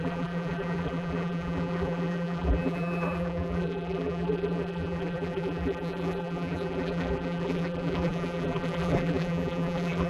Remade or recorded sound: remade